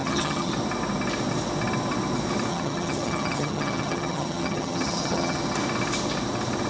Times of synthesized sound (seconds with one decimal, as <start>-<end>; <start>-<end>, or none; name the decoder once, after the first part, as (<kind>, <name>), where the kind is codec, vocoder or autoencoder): 0.0-0.5 (vocoder, HiFi-GAN); 2.5-5.4